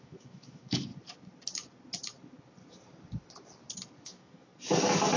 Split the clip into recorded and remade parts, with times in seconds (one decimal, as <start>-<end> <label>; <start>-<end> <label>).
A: 0.0-0.9 remade; 0.9-4.0 recorded; 4.0-4.5 remade; 4.5-5.2 recorded